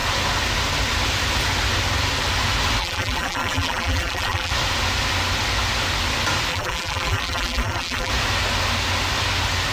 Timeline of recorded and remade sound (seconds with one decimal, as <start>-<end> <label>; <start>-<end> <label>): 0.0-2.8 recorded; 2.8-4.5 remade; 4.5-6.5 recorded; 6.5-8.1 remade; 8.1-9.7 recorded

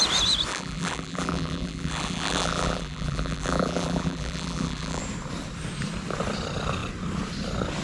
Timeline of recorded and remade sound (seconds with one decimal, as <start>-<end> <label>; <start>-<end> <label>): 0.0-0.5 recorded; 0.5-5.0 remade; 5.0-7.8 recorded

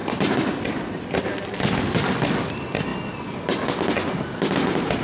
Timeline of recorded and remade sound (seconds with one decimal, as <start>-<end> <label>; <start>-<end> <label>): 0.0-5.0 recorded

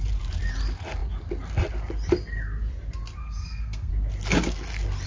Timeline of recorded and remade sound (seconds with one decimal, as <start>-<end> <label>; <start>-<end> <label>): 0.0-3.2 recorded; 3.2-3.9 remade; 3.9-5.1 recorded

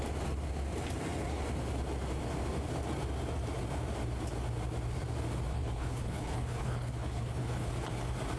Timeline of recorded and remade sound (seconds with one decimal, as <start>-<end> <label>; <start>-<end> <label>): 0.0-5.5 recorded; 5.5-7.7 remade; 7.7-8.4 recorded

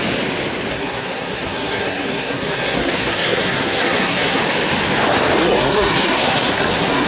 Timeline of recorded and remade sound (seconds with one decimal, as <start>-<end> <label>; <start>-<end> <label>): 0.0-0.7 recorded; 0.7-4.4 remade; 4.4-5.4 recorded; 5.4-7.1 remade

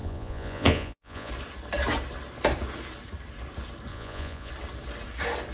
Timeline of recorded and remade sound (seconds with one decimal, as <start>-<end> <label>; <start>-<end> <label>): 0.0-1.3 remade; 1.3-3.9 recorded; 3.9-4.5 remade; 4.5-5.5 recorded

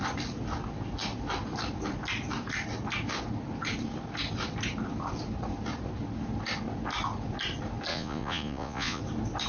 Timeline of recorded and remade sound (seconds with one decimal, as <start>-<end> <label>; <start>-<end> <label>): 0.0-7.9 recorded; 7.9-9.0 remade; 9.0-9.5 recorded